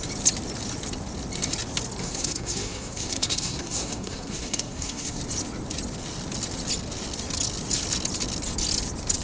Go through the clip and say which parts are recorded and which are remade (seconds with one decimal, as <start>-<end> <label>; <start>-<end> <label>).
0.0-2.0 recorded; 2.0-5.2 remade; 5.2-9.2 recorded